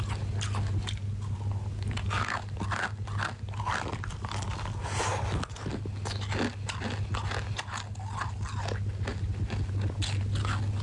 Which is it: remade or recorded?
recorded